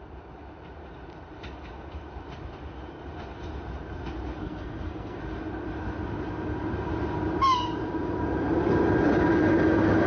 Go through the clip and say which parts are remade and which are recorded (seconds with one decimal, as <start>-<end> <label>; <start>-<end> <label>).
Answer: 0.0-4.4 recorded; 4.4-5.2 remade; 5.2-10.1 recorded